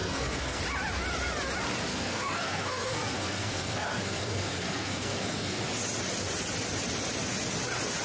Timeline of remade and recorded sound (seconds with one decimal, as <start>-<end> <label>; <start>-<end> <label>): 0.0-0.6 remade; 0.6-1.9 recorded; 1.9-5.6 remade; 5.6-8.0 recorded

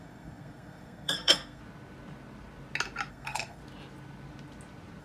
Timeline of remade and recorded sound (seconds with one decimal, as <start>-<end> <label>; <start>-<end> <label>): 0.0-1.6 remade; 1.6-3.1 recorded; 3.1-3.6 remade; 3.6-5.0 recorded